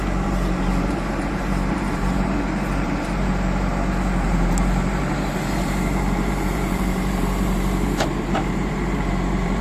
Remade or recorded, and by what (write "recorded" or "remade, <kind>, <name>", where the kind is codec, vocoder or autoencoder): remade, vocoder, BigVGAN v2